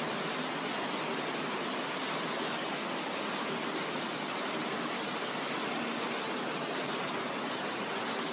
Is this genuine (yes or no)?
yes